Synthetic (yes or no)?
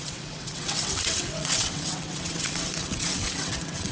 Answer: yes